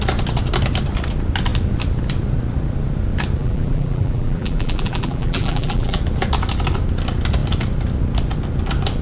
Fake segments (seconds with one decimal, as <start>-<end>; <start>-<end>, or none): 3.4-6.0